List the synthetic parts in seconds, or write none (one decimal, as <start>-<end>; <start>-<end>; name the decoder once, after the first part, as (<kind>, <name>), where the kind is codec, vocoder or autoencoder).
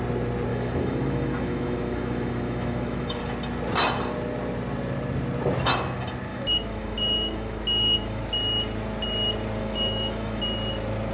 0.5-3.2 (autoencoder, DAC-VAE); 6.3-8.2; 9.6-10.4